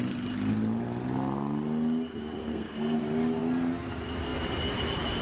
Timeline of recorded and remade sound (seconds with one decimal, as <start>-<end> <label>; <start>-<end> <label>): 0.0-2.4 recorded; 2.4-3.0 remade; 3.0-5.2 recorded